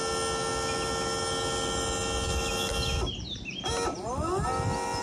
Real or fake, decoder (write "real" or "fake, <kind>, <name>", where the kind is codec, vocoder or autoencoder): real